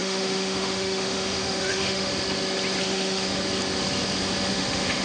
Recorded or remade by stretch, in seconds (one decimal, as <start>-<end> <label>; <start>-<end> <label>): 0.0-2.1 remade; 2.1-2.8 recorded; 2.8-3.4 remade; 3.4-4.5 recorded; 4.5-5.0 remade